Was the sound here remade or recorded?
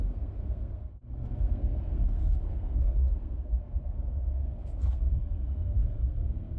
remade